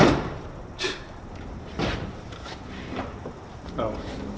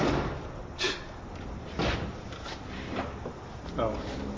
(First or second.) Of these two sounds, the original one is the second